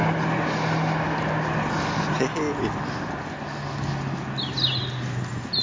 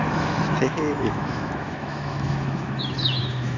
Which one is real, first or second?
first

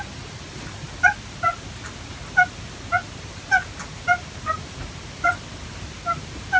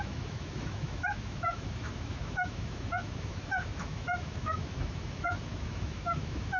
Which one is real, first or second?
first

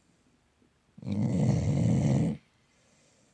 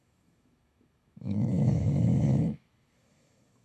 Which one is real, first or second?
first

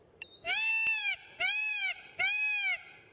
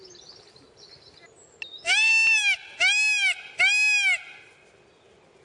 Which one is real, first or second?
second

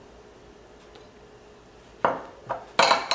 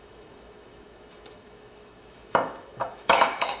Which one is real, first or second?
first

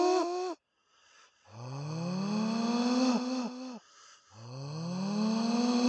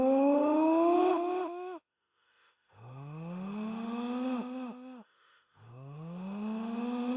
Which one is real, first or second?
first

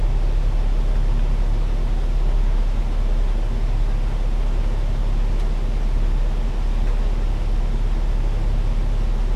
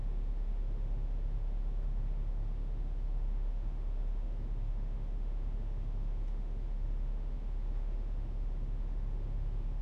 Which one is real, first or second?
first